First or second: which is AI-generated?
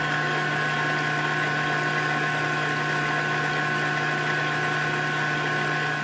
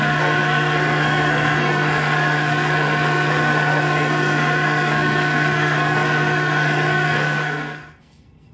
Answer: second